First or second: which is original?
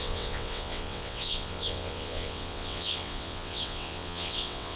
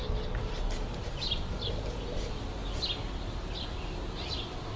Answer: second